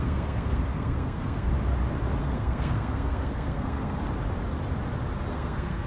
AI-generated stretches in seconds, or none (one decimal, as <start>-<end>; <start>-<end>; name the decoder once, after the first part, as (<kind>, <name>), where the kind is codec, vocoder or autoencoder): 0.0-1.5 (codec, SNAC); 2.2-4.0; 5.3-5.9